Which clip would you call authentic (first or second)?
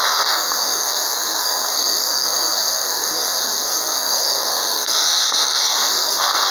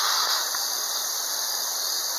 second